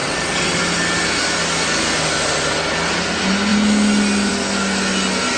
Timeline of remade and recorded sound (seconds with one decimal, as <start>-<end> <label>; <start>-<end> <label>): 0.0-0.6 remade; 0.6-5.4 recorded